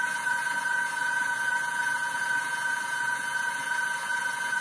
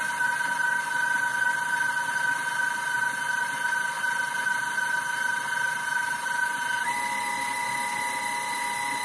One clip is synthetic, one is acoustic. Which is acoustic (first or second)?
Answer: second